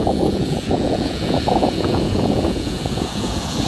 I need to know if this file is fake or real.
fake